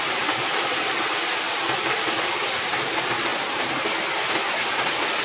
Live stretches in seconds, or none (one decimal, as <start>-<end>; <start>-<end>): 3.3-5.2